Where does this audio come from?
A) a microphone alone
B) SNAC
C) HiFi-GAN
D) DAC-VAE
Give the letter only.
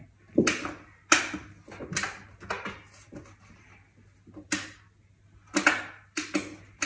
A